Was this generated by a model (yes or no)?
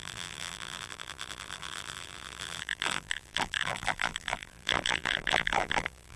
yes